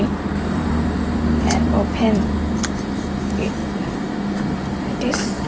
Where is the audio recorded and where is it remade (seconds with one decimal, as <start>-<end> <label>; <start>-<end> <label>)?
0.0-5.5 remade